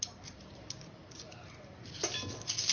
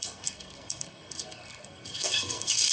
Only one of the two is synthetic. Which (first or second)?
second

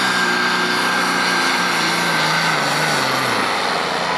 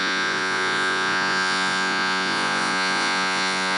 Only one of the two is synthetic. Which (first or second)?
second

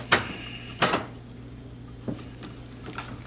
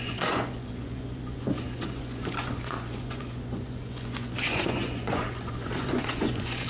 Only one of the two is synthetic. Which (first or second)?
second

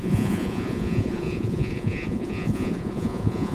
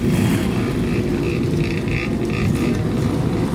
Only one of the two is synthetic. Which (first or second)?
first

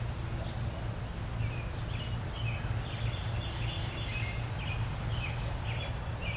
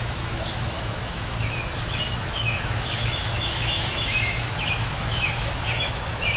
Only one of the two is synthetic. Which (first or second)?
second